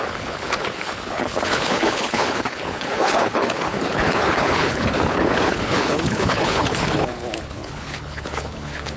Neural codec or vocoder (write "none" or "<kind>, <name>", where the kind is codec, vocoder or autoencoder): codec, HILCodec